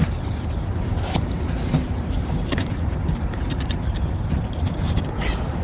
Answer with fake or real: fake